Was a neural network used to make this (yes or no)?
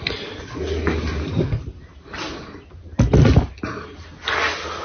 no